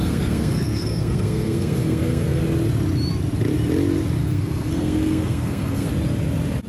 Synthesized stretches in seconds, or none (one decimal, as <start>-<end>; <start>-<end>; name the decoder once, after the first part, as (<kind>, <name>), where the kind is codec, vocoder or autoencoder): 0.0-2.4 (codec, SNAC); 4.2-5.9